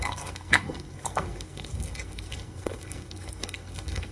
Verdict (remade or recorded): remade